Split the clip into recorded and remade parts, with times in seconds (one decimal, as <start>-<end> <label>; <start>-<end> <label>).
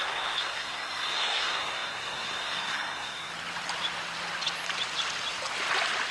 0.0-3.3 remade; 3.3-6.1 recorded